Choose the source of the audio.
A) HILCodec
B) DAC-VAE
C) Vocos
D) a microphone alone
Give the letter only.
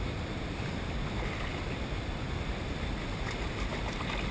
D